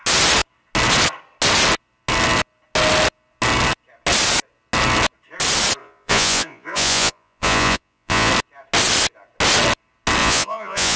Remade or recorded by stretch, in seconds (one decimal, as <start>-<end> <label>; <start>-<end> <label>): 0.0-5.8 recorded; 5.8-8.3 remade; 8.3-10.2 recorded; 10.2-11.0 remade